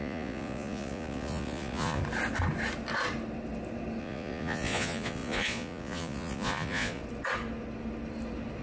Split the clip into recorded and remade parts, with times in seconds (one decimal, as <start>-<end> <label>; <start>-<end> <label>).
0.0-2.0 remade; 2.0-4.0 recorded; 4.0-7.0 remade; 7.0-8.6 recorded